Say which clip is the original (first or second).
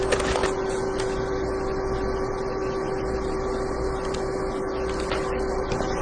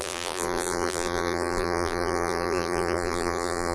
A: first